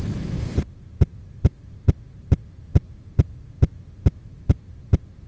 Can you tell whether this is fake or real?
real